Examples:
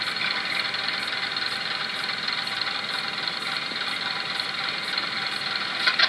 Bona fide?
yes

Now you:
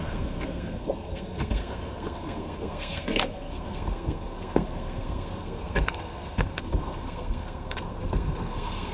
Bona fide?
no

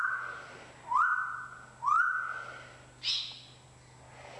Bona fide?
yes